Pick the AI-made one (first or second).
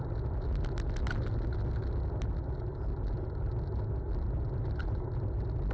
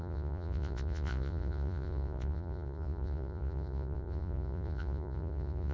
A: second